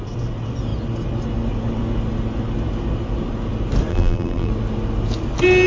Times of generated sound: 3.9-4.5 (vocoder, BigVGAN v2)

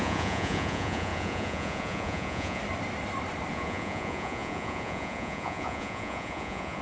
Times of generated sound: 0.0-2.6 (vocoder, Vocos); 3.5-6.8

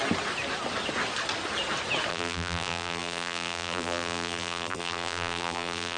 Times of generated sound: 2.1-6.0 (vocoder, BigVGAN v2)